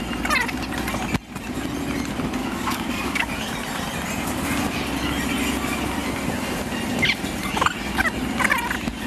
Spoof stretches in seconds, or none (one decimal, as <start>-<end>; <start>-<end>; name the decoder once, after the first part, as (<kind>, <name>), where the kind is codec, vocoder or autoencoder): 2.4-3.3 (codec, DAC)